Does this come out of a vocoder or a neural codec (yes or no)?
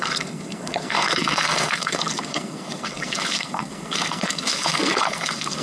yes